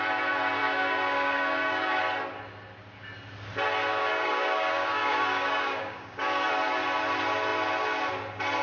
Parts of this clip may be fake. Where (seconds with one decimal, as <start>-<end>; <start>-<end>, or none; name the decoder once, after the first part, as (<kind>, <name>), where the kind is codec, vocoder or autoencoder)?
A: 0.6-2.0 (codec, DAC); 4.0-6.5